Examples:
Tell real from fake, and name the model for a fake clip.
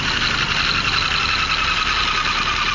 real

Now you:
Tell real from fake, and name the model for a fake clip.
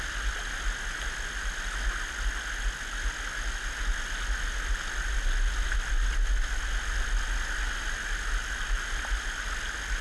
real